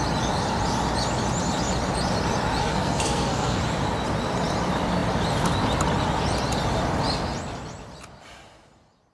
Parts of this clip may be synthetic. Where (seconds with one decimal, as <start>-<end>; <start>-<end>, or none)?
2.6-3.6